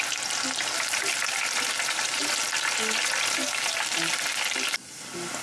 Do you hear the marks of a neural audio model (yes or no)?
no